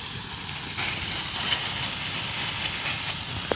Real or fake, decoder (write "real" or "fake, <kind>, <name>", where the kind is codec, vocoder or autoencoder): real